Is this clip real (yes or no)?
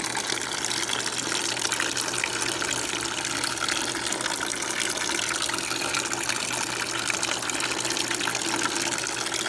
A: yes